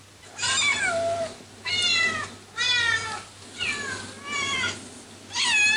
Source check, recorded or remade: recorded